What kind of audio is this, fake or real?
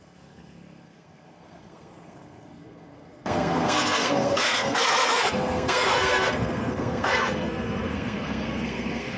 fake